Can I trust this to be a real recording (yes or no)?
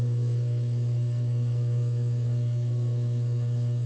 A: no